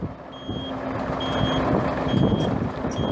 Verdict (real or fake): real